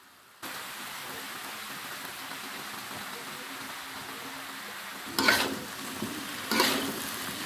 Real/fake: real